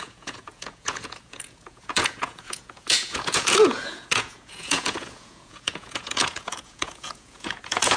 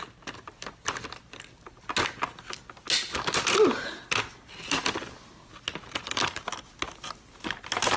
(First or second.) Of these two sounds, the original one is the second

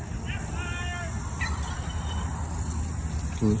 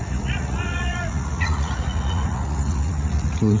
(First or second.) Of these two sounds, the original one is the first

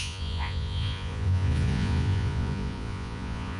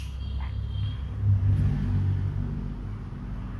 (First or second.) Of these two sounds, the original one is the second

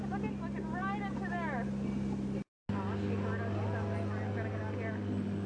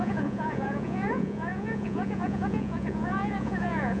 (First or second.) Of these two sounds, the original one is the first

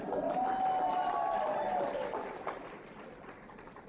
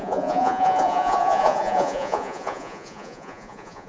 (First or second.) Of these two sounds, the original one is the first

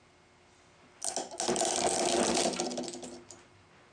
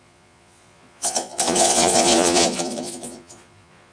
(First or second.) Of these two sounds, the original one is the first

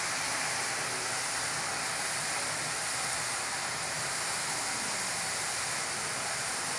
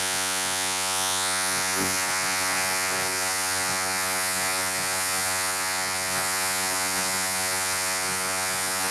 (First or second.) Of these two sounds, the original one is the first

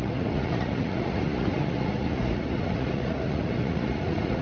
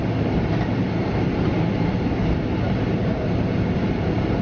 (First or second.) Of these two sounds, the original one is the second